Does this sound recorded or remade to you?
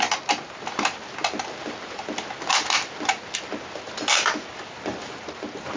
recorded